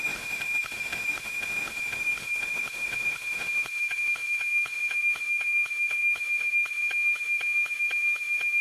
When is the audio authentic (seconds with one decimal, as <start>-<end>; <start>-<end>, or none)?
none